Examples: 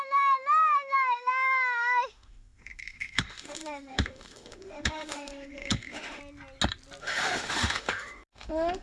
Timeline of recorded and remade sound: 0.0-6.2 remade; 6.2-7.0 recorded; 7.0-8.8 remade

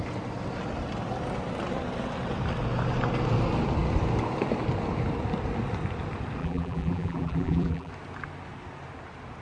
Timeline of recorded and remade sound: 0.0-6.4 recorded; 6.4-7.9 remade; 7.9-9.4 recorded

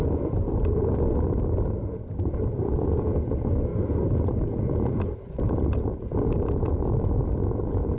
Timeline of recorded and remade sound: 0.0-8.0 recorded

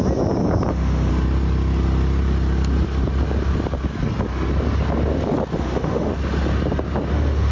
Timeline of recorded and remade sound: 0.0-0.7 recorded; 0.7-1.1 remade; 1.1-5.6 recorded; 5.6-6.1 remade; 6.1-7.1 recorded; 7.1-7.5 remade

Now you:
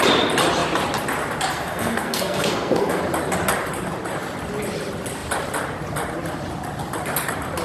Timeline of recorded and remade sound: 0.0-1.5 recorded; 1.5-3.0 remade; 3.0-7.6 recorded

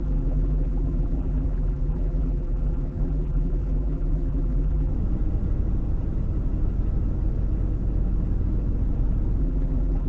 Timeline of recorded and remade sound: 0.0-4.9 remade; 4.9-9.4 recorded; 9.4-10.1 remade

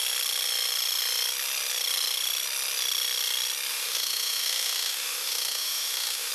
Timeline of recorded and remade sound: 0.0-3.7 recorded; 3.7-6.3 remade